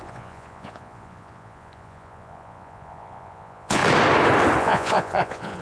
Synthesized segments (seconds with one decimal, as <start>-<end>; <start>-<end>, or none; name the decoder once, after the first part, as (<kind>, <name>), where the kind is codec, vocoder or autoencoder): 0.0-3.8 (vocoder, Vocos); 4.6-5.6